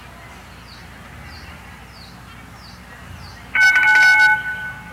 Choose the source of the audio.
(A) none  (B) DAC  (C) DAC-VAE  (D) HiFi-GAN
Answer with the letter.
A